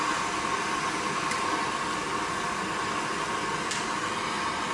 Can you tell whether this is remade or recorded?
recorded